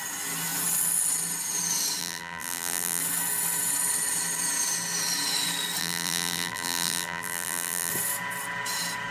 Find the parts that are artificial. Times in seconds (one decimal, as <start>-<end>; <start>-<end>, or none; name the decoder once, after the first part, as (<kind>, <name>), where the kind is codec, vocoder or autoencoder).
2.0-3.0 (vocoder, BigVGAN v2); 5.8-7.9